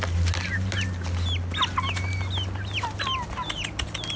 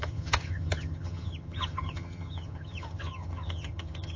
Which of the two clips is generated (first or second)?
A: second